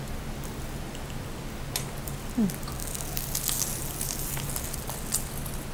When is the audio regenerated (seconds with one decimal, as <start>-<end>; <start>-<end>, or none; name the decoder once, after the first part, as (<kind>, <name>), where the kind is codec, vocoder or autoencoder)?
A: none